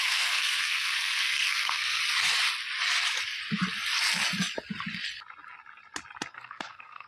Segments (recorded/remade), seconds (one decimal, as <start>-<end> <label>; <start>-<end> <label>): 0.0-2.0 remade; 2.0-6.3 recorded; 6.3-7.1 remade